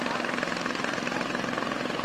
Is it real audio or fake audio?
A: real